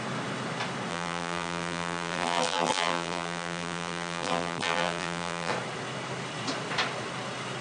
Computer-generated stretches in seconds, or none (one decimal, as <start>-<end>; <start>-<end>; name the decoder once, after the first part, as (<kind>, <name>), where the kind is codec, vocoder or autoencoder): 0.9-5.5 (vocoder, BigVGAN v2)